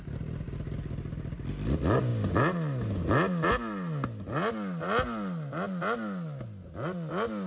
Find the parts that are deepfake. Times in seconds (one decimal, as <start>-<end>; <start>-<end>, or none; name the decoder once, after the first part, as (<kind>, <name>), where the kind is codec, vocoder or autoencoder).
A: none